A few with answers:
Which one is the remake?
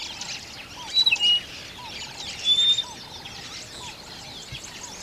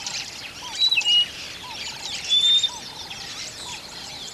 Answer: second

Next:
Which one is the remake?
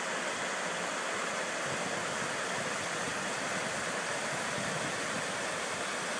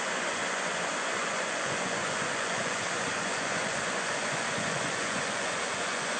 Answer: second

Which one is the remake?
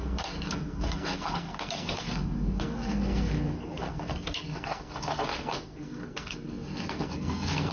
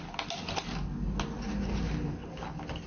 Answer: first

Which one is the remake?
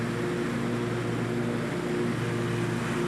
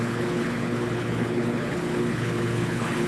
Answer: second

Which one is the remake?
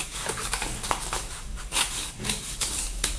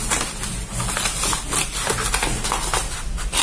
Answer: first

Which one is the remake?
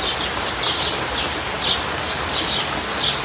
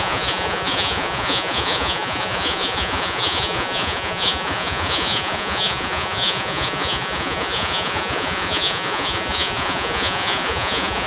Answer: second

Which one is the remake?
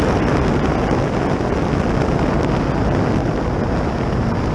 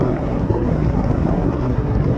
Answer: second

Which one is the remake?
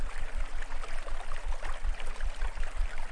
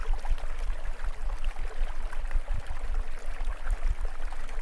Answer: second